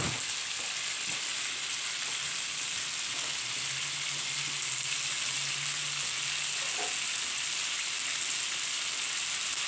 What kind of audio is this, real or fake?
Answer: real